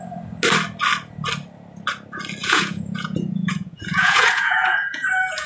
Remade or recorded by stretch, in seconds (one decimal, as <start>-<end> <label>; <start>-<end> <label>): 0.0-2.4 recorded; 2.4-5.5 remade